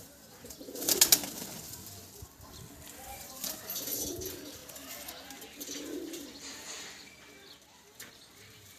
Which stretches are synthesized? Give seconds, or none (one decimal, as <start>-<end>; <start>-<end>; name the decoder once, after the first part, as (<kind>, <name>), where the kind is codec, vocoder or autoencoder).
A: none